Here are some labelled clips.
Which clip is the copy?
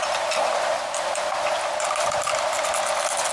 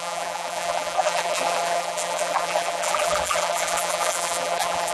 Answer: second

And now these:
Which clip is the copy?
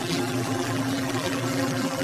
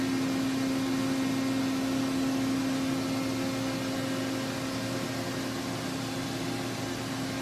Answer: first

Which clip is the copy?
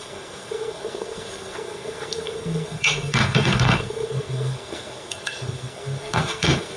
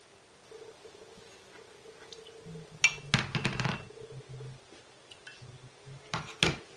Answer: first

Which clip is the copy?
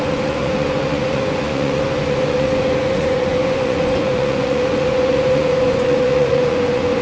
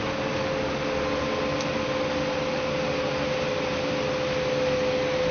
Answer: first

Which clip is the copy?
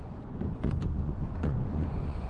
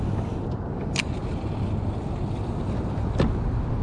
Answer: first